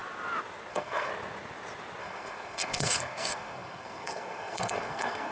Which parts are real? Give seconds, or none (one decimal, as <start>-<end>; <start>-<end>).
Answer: 0.0-0.7; 1.1-2.0